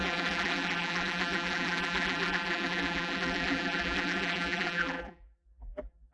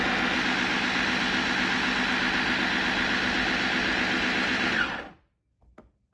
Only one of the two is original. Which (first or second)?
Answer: second